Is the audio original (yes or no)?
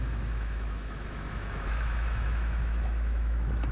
no